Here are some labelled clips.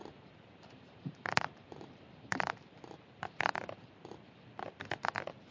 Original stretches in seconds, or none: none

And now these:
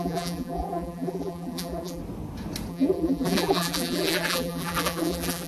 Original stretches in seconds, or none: 2.0-2.7

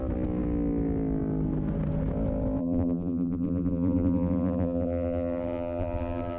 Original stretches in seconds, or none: 0.0-2.6